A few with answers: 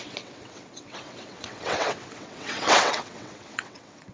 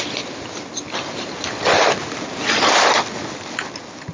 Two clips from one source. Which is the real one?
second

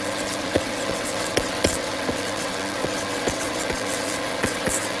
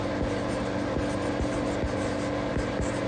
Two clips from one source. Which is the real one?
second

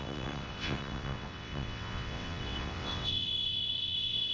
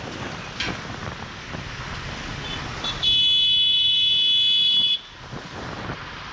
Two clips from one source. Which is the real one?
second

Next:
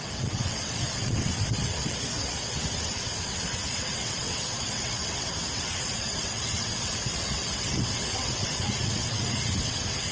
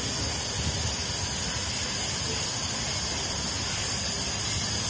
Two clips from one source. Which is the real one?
second